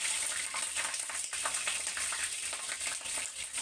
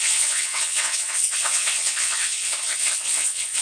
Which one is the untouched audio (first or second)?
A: first